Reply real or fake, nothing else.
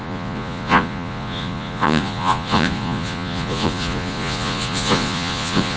fake